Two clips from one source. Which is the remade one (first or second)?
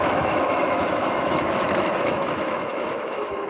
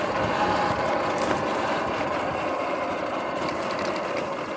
first